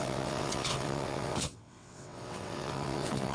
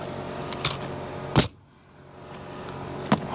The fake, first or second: first